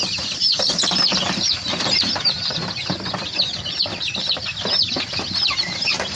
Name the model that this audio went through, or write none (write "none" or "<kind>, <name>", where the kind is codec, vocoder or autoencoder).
vocoder, BigVGAN v2